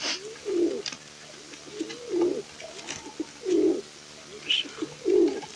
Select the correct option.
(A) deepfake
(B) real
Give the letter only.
B